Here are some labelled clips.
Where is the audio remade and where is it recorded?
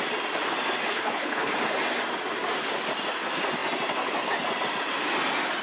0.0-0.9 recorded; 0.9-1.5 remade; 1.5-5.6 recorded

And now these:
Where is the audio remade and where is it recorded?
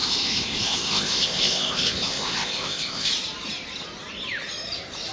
0.0-3.1 remade; 3.1-5.1 recorded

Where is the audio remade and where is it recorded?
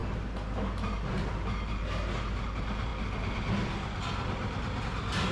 0.0-5.3 recorded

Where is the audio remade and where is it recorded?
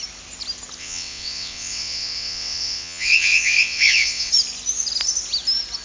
0.0-0.8 recorded; 0.8-4.3 remade; 4.3-5.8 recorded